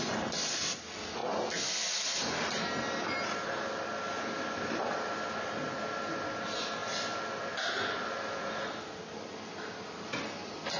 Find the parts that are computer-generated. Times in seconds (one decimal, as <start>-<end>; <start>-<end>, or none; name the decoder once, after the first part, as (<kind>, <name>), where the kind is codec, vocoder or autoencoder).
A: none